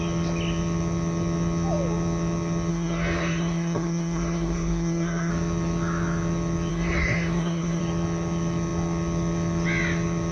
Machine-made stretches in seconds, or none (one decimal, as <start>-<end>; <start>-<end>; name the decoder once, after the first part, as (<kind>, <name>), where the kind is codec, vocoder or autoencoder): 2.7-5.3 (codec, SNAC); 6.7-7.8